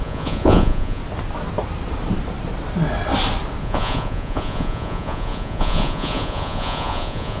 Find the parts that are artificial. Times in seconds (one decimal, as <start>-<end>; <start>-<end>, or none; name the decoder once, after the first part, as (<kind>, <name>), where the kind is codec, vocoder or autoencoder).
0.0-1.0 (vocoder, Vocos); 3.6-7.4

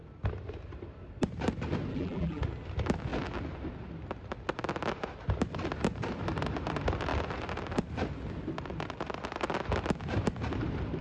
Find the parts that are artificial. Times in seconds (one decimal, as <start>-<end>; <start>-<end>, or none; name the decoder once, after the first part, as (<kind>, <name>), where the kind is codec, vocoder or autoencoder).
1.9-2.4 (vocoder, BigVGAN v2)